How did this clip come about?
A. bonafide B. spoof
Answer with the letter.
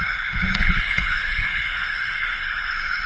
B